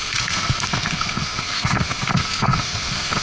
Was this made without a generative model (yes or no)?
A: no